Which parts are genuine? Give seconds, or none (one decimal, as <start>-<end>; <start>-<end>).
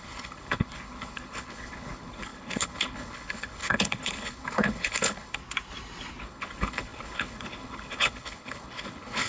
5.4-6.2